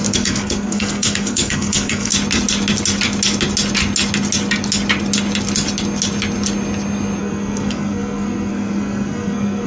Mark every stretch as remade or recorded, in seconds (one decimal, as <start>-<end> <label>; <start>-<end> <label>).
0.0-2.1 remade; 2.1-7.2 recorded; 7.2-9.7 remade